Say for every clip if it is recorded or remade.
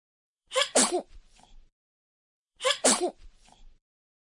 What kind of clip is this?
remade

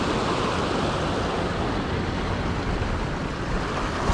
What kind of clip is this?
recorded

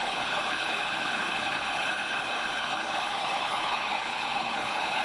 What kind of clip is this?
remade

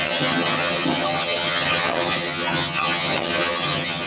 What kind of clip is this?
remade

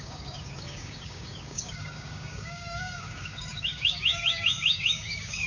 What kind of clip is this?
remade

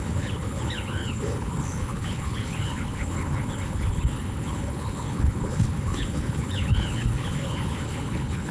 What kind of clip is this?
remade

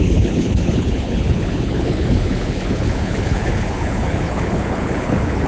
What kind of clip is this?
remade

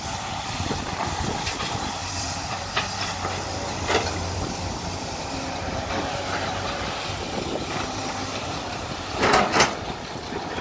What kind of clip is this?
remade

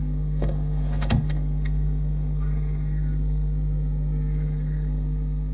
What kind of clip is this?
remade